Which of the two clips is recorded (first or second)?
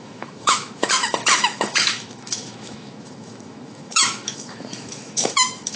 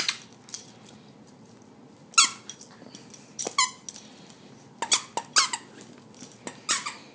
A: second